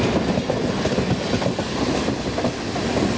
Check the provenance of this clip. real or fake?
real